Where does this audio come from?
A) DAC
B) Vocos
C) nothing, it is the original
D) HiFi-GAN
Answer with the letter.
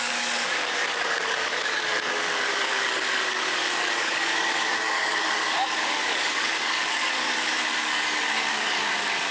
A